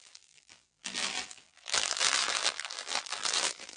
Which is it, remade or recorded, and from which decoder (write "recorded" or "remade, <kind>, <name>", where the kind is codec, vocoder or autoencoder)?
remade, vocoder, BigVGAN v2